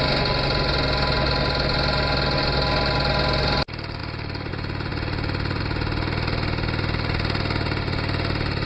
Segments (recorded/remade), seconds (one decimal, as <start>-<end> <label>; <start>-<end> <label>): 0.0-4.0 recorded; 4.0-4.5 remade; 4.5-4.9 recorded; 4.9-5.6 remade; 5.6-8.7 recorded